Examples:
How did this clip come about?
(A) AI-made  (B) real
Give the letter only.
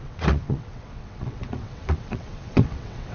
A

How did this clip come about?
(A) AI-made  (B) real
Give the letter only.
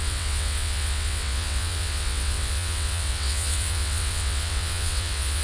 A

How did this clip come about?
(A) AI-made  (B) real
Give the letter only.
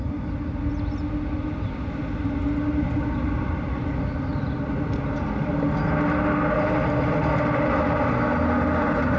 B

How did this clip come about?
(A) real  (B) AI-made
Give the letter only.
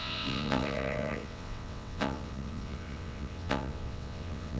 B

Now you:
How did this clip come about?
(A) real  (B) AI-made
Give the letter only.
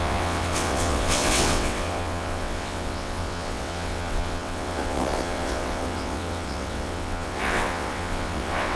B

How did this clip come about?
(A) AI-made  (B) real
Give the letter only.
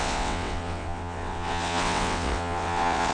A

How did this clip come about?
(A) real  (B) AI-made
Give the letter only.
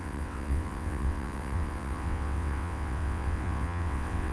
B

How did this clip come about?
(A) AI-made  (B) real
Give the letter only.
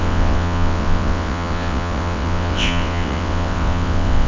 A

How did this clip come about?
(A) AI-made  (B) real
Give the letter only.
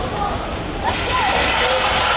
B